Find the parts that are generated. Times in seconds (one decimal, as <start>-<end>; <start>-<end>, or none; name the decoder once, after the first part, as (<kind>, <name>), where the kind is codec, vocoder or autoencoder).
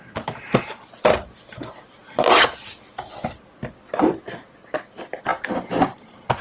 none